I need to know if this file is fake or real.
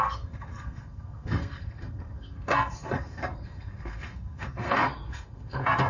fake